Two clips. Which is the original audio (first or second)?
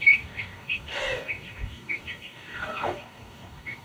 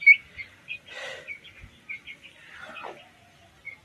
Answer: second